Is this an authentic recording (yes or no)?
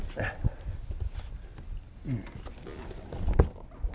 yes